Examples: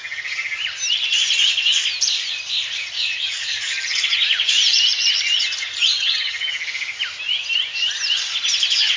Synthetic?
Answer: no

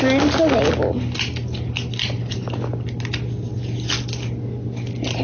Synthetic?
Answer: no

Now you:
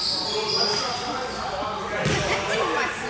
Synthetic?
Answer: no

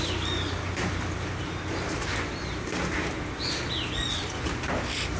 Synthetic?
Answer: no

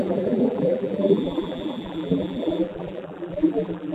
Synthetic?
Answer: yes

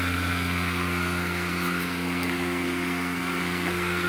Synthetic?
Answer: yes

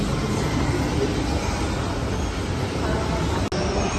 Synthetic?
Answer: no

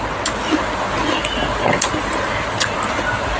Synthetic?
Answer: no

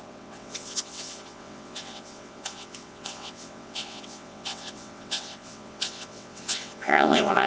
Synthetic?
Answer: yes